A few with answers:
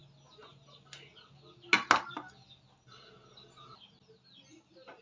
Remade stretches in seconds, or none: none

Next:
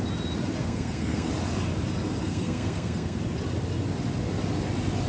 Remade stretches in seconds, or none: 0.6-1.3; 2.2-3.2

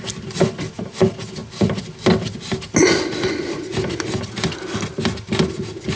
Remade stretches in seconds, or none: none

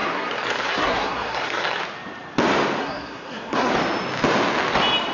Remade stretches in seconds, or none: 0.0-1.8; 2.8-3.7

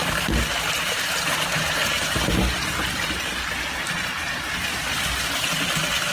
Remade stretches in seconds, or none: none

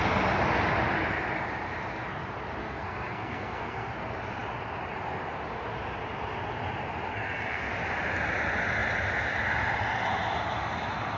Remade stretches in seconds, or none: 2.6-3.9; 7.1-7.7

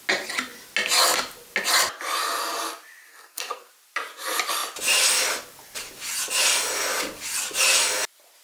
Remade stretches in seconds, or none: 3.1-3.7

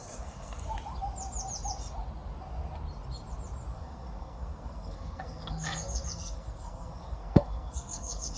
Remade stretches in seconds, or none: 0.0-0.6; 3.7-8.4